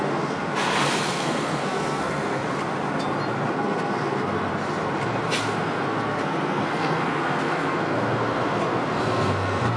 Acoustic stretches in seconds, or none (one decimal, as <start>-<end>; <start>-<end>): 0.5-1.1; 2.4-3.5; 4.5-5.4

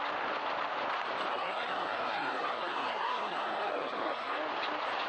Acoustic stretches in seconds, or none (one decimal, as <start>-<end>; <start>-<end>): 0.0-1.3; 4.4-5.1